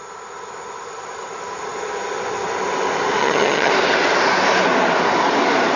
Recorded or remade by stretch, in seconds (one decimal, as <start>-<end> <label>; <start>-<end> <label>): 0.0-3.2 recorded; 3.2-3.7 remade; 3.7-5.8 recorded